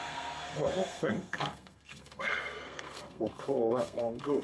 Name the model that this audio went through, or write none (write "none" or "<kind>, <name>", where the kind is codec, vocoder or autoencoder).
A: codec, SNAC